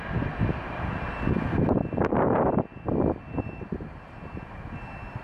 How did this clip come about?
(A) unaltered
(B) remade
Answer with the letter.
A